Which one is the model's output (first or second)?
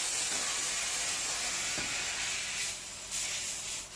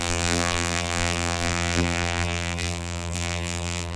second